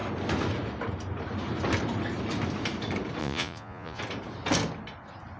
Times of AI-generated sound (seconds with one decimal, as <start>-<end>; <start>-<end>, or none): 3.2-4.0